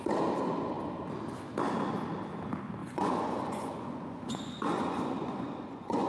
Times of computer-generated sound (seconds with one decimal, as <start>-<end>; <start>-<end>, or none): 2.8-6.1